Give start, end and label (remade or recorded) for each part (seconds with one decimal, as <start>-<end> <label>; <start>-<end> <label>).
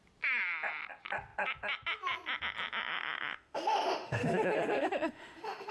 0.0-2.9 recorded; 2.9-5.7 remade